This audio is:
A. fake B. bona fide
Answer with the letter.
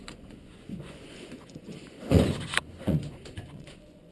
A